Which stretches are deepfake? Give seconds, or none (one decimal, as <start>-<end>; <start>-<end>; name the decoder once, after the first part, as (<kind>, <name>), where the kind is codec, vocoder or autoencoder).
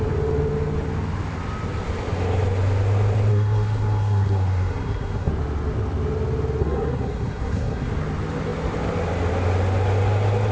3.3-5.3 (codec, SNAC); 6.6-7.9